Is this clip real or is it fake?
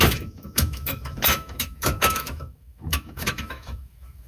fake